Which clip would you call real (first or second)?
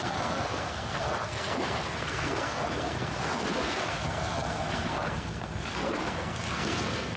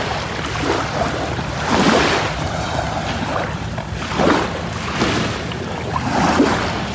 second